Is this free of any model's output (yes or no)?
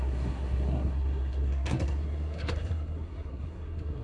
no